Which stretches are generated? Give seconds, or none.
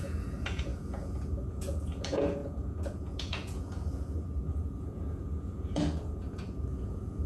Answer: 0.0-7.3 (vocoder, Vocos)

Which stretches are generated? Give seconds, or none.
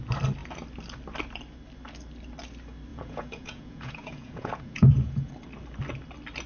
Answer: 2.9-5.3 (vocoder, Vocos)